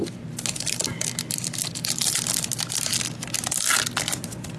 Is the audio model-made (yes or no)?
no